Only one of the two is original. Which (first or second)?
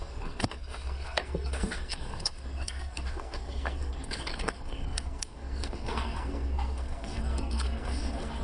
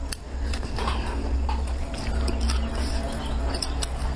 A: second